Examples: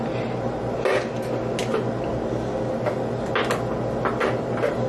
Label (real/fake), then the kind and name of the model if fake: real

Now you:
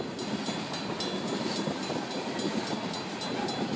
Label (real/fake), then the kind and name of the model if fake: real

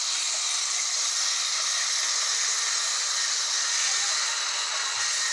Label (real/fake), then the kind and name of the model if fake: real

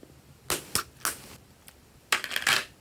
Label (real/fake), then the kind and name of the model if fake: real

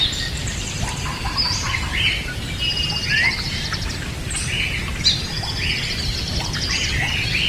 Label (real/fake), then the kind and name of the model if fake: fake, vocoder, BigVGAN v2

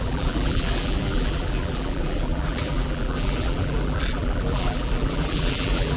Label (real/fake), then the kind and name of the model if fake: fake, vocoder, BigVGAN v2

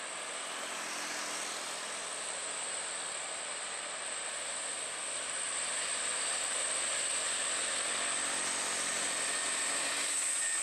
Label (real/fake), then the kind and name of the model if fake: real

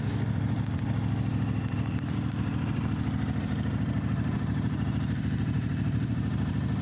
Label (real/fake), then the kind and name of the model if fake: fake, vocoder, BigVGAN v2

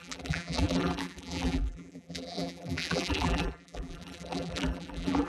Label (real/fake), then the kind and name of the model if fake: fake, vocoder, BigVGAN v2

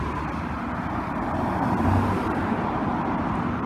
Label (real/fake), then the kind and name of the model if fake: fake, vocoder, BigVGAN v2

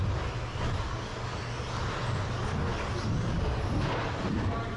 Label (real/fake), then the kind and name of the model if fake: real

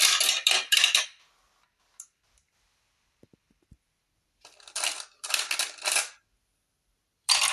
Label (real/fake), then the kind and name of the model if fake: fake, vocoder, BigVGAN v2